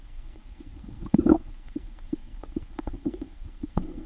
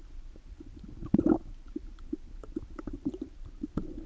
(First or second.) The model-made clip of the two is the first